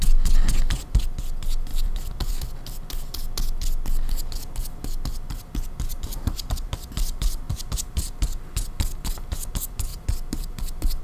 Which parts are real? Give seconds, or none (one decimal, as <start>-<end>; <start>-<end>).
0.0-1.7; 2.4-5.9; 8.2-9.9